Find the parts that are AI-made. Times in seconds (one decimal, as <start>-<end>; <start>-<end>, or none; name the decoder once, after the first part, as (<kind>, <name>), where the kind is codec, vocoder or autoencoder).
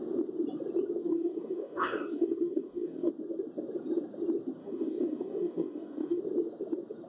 1.0-3.1 (codec, DAC); 4.6-6.2